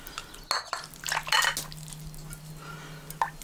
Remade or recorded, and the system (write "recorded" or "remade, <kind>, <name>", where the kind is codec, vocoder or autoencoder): recorded